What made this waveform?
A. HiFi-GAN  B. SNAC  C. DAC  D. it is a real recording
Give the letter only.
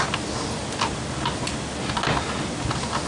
D